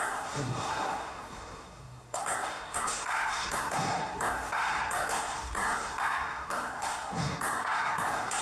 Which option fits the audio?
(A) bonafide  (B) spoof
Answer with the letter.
B